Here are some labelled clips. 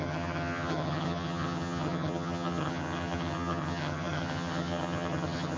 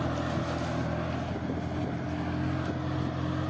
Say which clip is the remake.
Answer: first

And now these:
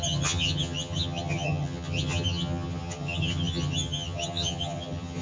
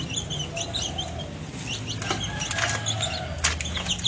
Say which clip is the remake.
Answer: first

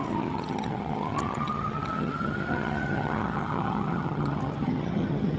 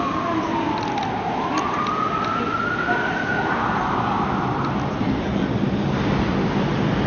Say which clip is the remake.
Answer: first